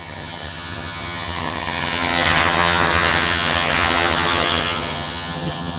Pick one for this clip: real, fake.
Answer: fake